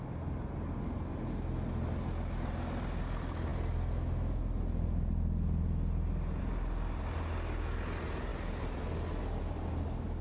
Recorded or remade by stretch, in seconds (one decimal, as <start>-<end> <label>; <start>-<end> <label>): 0.0-10.2 recorded